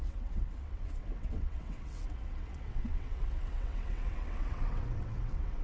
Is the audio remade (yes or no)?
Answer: yes